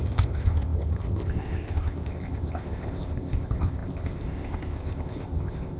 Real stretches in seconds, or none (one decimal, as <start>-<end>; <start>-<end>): none